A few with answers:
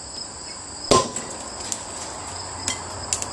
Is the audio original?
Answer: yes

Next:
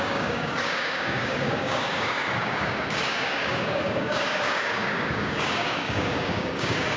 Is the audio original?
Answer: no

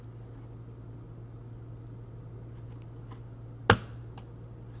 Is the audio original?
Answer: yes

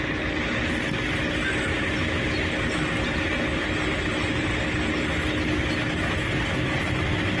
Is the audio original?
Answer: yes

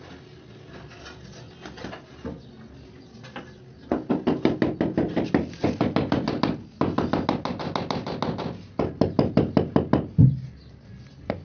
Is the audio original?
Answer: yes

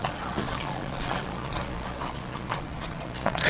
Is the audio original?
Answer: no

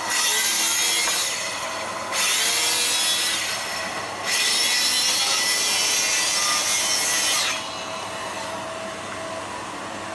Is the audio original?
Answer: yes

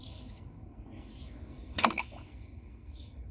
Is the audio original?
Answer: no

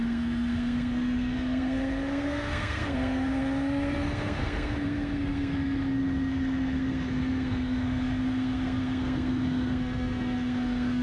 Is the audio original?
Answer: no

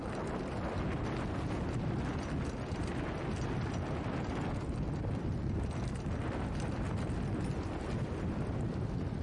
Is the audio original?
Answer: yes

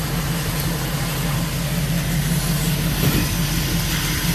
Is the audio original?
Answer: yes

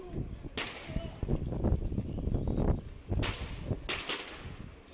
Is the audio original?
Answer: yes